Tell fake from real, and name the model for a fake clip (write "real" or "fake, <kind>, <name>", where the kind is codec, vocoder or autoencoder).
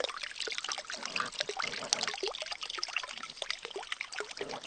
real